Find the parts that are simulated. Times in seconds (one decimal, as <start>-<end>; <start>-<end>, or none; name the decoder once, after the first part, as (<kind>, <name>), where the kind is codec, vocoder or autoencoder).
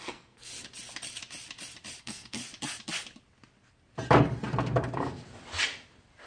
0.0-0.5 (codec, SNAC); 2.0-2.4